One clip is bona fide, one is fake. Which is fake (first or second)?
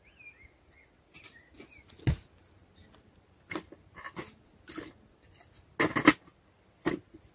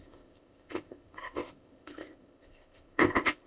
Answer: second